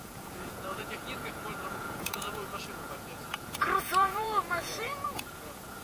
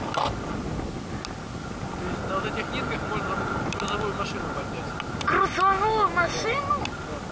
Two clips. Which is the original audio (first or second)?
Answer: second